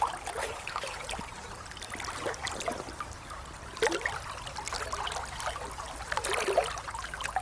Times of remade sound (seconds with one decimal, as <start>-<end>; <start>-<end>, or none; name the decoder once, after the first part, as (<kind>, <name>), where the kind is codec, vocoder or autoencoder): 0.4-1.0 (codec, HILCodec)